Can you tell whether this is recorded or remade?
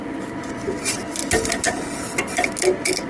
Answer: recorded